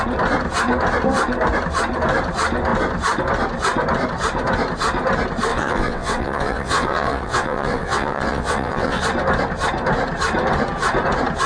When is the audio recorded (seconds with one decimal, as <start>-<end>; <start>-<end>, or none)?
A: 0.0-5.5; 9.0-11.5